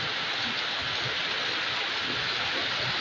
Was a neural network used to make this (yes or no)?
no